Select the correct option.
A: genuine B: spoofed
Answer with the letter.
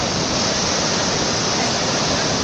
A